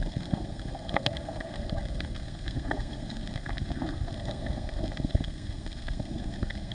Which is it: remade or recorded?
remade